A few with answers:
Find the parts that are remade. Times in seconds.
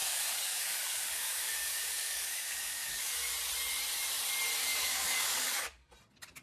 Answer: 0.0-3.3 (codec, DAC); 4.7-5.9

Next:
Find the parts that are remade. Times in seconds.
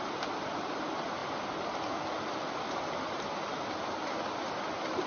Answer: none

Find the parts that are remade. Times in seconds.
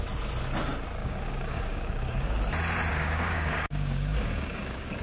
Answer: 1.0-2.4 (codec, DAC); 2.9-5.0